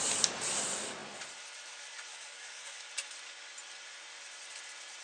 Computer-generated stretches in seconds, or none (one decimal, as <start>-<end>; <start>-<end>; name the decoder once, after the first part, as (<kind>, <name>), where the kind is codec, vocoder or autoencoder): 2.1-2.9 (codec, DAC)